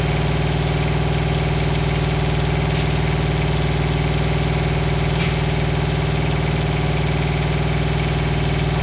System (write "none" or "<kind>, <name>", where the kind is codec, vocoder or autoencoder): none